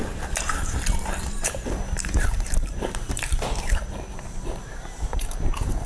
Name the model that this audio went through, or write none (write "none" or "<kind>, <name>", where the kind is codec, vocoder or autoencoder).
vocoder, BigVGAN v2